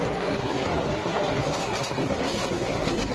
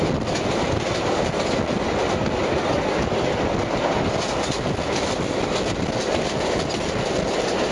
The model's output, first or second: first